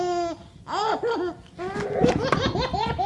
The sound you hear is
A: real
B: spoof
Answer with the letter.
A